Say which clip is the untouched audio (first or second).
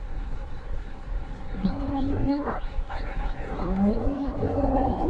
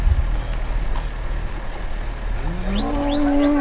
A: second